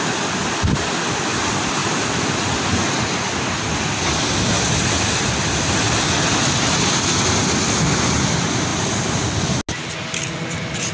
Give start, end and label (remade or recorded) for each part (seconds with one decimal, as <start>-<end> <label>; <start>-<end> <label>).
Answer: 0.0-10.9 recorded